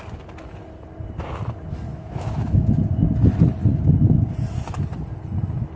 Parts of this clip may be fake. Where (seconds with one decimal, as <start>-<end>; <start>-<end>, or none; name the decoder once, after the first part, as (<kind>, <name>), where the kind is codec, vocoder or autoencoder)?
1.9-2.8 (autoencoder, DAC-VAE)